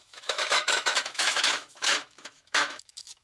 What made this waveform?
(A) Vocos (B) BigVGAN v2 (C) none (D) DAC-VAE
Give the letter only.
D